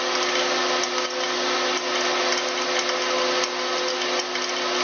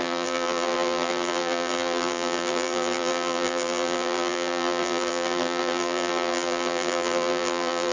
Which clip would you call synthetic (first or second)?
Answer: second